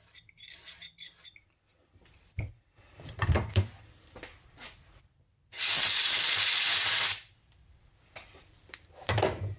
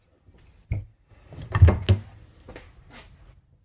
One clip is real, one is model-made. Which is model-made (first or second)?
first